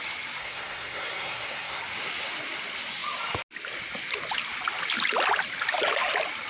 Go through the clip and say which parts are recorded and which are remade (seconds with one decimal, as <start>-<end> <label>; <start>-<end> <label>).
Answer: 0.0-0.4 recorded; 0.4-1.8 remade; 1.8-6.5 recorded